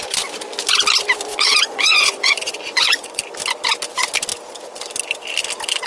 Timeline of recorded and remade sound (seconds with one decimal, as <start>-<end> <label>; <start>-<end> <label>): 0.0-1.3 recorded; 1.3-3.2 remade; 3.2-5.9 recorded